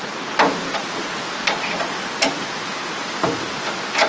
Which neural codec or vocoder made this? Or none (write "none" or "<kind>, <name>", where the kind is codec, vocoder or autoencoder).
none